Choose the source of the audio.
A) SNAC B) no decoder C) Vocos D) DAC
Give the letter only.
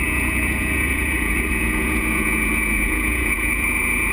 C